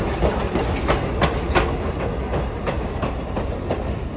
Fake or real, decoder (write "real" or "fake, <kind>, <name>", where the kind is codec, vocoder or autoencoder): real